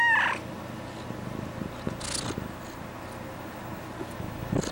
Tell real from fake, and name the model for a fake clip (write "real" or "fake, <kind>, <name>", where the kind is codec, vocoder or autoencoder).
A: real